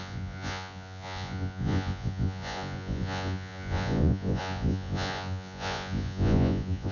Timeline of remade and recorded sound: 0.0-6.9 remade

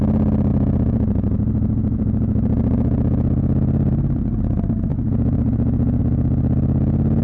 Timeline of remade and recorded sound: 0.0-0.5 recorded; 0.5-4.2 remade; 4.2-4.9 recorded; 4.9-6.0 remade; 6.0-7.2 recorded

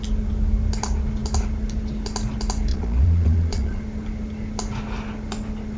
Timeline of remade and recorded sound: 0.0-2.7 recorded; 2.7-3.8 remade; 3.8-5.8 recorded

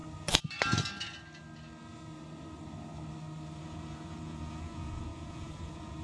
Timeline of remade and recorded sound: 0.0-3.6 recorded; 3.6-6.0 remade

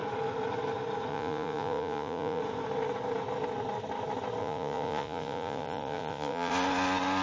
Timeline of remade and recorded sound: 0.0-1.1 recorded; 1.1-2.4 remade; 2.4-4.4 recorded; 4.4-6.5 remade; 6.5-7.2 recorded

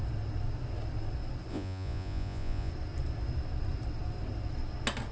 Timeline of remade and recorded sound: 0.0-1.5 recorded; 1.5-2.7 remade; 2.7-5.1 recorded

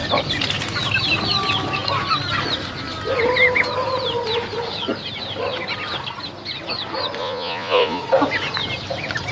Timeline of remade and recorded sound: 0.0-7.2 recorded; 7.2-8.0 remade; 8.0-9.3 recorded